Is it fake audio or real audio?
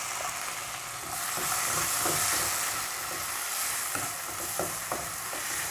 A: real